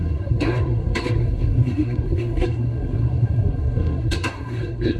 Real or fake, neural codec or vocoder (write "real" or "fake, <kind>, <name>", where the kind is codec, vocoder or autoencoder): fake, codec, SNAC